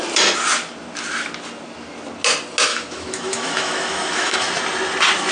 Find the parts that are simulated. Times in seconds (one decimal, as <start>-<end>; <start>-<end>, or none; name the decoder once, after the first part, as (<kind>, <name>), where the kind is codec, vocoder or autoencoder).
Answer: 2.7-4.5 (autoencoder, DAC-VAE)